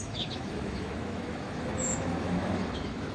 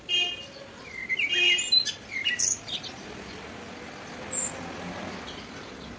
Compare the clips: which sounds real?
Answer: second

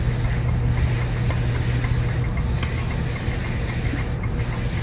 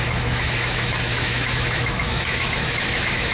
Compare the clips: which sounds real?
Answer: first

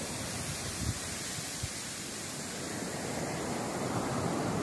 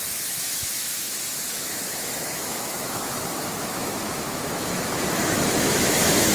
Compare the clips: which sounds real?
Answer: first